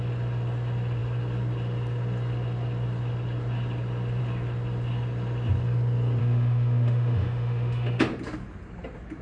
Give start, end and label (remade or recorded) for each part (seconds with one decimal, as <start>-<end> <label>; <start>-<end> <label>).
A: 0.0-6.2 recorded; 6.2-8.0 remade; 8.0-9.2 recorded